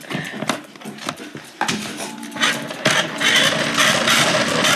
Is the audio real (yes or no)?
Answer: yes